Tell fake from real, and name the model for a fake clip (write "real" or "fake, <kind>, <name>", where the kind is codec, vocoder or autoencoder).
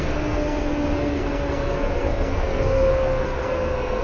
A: fake, codec, SNAC